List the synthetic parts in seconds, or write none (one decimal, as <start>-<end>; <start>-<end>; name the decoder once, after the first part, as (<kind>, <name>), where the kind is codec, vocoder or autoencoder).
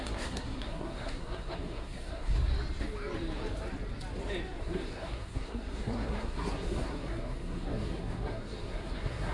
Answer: 0.0-2.5 (codec, SNAC); 4.6-9.3